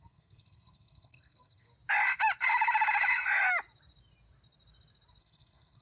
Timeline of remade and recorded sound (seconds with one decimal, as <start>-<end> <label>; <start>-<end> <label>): 0.0-1.7 remade; 1.7-5.2 recorded; 5.2-5.8 remade